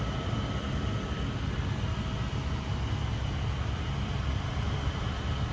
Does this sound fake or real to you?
real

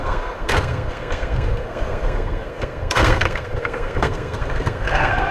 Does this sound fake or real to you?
fake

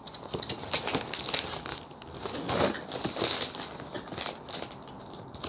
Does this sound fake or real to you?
real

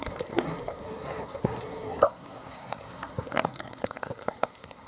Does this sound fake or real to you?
fake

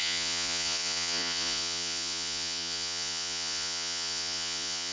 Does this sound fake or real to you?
fake